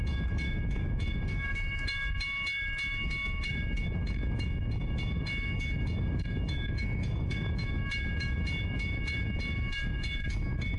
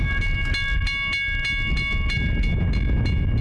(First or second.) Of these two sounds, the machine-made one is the first